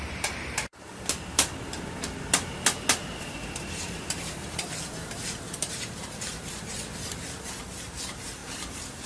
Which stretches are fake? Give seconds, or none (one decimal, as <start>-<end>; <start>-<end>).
0.0-0.9; 3.2-9.1